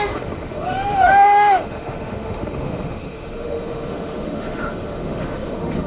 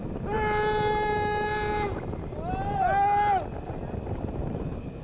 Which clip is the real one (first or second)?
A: second